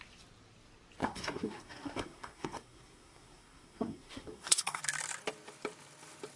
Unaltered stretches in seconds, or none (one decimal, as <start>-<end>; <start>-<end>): 0.0-1.0; 4.8-6.4